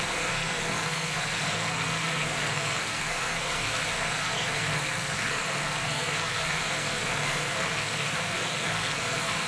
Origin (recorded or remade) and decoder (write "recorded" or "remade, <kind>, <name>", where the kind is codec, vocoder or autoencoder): remade, codec, SNAC